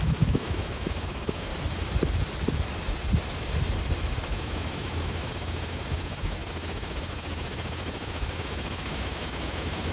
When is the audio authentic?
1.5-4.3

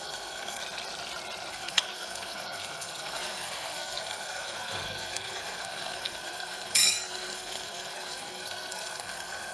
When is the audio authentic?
0.6-1.5